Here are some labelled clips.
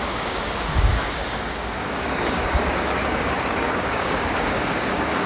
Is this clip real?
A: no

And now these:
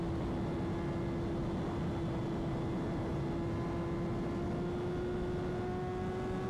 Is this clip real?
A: yes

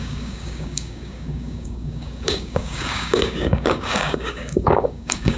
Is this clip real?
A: no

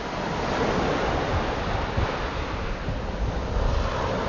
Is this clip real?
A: yes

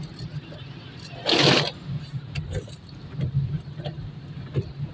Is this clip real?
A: yes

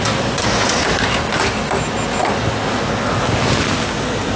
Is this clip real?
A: yes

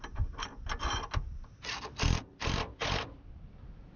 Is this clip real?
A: yes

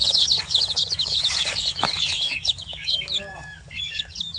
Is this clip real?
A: no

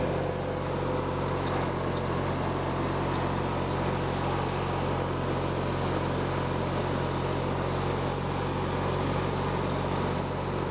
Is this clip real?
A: yes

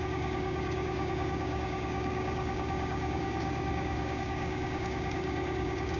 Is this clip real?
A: no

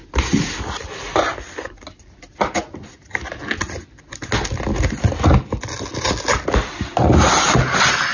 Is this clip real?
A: yes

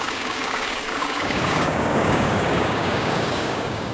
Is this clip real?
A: no